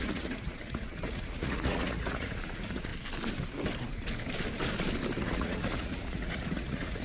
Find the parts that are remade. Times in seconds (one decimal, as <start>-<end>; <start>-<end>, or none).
0.0-2.9; 5.2-7.0